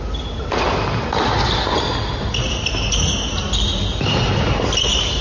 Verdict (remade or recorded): recorded